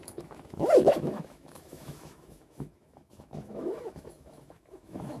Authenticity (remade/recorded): remade